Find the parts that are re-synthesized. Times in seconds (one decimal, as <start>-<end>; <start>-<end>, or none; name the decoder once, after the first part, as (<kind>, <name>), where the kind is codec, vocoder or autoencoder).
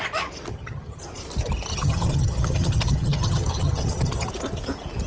0.5-1.0 (vocoder, HiFi-GAN); 1.7-4.3